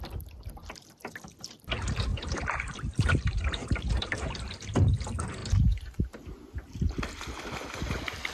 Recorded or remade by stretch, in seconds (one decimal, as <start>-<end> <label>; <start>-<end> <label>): 0.0-2.1 recorded; 2.1-4.2 remade; 4.2-8.3 recorded

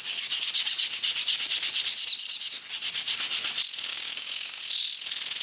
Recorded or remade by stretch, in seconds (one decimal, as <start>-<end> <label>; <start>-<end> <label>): 0.0-3.9 recorded; 3.9-4.6 remade; 4.6-5.4 recorded

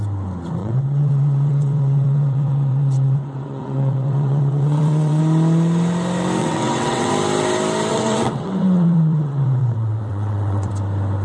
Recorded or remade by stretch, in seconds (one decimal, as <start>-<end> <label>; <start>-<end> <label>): 0.0-0.6 recorded; 0.6-5.2 remade; 5.2-6.4 recorded; 6.4-7.1 remade; 7.1-7.9 recorded; 7.9-10.7 remade; 10.7-11.2 recorded

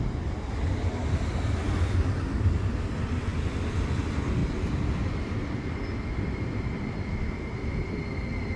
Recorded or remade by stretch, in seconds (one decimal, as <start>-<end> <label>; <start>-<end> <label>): 0.0-8.6 recorded

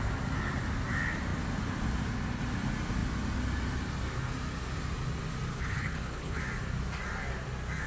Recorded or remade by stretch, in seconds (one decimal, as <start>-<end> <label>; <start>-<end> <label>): 0.0-5.5 recorded; 5.5-6.4 remade; 6.4-7.9 recorded